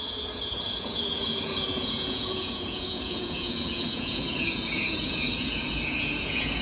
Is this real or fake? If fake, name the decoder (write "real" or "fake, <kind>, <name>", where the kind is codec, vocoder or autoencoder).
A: fake, vocoder, Vocos